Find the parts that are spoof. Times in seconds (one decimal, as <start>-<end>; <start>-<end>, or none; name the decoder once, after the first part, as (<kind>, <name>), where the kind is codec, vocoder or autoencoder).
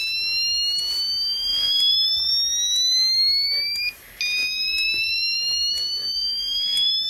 1.5-2.3 (vocoder, BigVGAN v2); 4.4-7.1